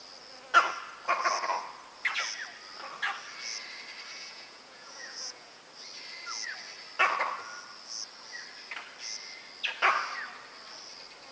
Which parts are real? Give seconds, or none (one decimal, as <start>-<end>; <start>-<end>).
0.0-4.1; 5.6-11.3